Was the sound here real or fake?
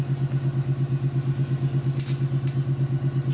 real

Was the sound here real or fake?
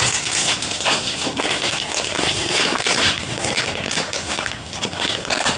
fake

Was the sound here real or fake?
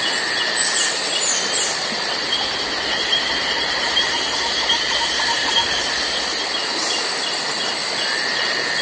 real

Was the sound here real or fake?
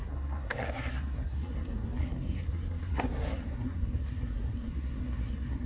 fake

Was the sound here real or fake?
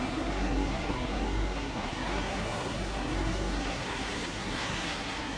fake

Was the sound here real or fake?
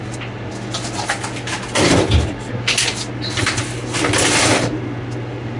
real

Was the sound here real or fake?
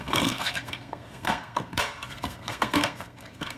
fake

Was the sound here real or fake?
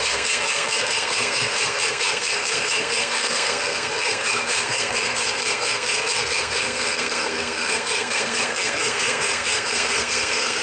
fake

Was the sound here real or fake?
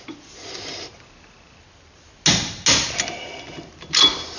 real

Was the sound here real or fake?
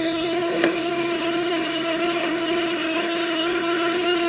fake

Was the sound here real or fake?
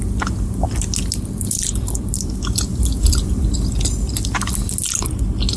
real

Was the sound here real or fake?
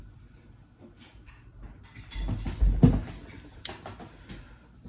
real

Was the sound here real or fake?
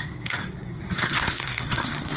fake